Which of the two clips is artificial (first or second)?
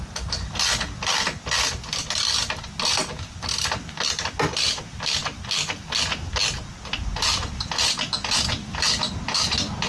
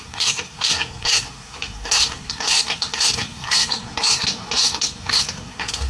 second